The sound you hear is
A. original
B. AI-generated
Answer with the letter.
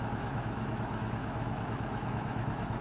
B